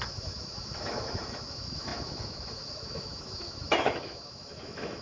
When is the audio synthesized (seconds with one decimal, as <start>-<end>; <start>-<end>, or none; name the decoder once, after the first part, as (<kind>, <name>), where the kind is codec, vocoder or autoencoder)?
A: 0.0-5.0 (autoencoder, DAC-VAE)